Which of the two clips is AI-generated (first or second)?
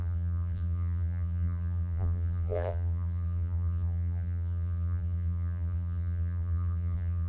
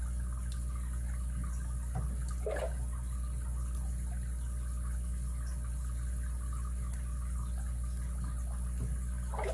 first